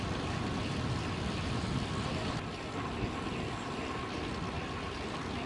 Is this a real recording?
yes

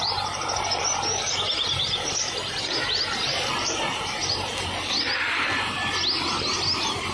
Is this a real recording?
yes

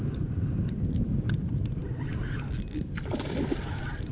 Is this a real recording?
yes